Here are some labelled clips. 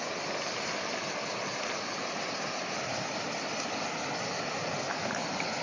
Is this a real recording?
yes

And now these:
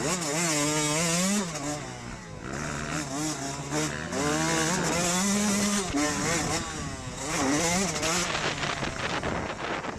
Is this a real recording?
yes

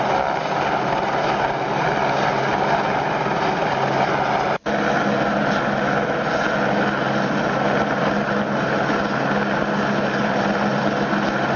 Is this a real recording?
yes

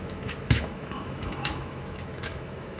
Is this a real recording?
no